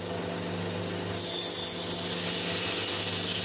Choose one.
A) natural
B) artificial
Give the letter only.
A